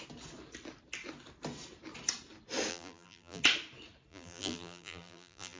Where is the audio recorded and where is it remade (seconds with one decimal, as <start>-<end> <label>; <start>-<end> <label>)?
0.0-2.7 recorded; 2.7-3.4 remade; 3.4-4.1 recorded; 4.1-5.6 remade